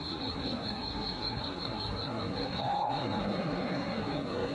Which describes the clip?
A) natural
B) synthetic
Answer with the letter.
B